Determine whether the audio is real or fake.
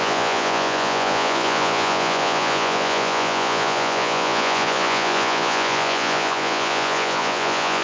fake